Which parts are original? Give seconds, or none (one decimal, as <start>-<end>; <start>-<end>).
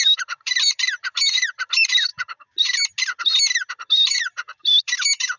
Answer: 2.1-3.7